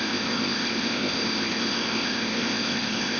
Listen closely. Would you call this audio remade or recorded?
remade